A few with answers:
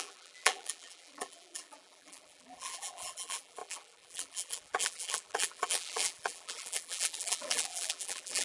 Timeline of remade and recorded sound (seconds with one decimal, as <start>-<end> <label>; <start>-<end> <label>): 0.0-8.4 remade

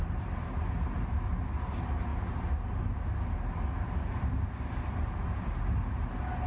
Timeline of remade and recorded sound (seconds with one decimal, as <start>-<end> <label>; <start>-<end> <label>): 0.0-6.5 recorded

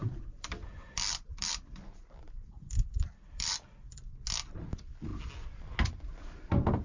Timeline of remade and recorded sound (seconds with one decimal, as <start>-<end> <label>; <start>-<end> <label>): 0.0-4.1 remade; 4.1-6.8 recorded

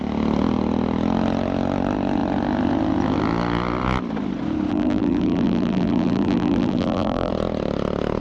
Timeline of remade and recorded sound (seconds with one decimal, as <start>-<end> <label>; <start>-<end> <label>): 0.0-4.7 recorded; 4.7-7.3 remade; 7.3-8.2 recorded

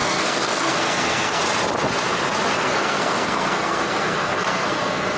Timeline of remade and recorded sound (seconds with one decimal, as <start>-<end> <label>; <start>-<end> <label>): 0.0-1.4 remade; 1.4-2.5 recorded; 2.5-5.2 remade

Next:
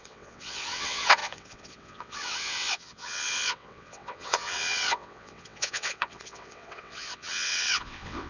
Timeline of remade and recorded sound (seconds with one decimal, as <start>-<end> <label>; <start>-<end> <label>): 0.0-8.3 remade

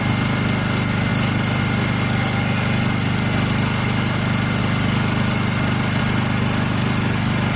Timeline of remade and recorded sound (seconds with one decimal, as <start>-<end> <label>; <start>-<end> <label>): 0.0-7.6 recorded

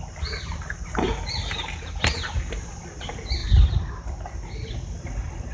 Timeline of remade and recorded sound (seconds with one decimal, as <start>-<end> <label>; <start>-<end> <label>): 0.0-5.5 recorded